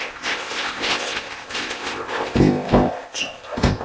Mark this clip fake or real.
fake